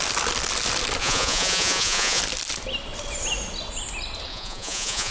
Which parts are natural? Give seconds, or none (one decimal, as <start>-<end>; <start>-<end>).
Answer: 0.0-1.0; 2.2-4.3